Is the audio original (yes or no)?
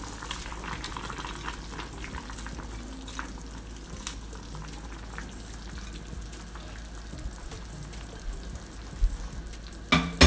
yes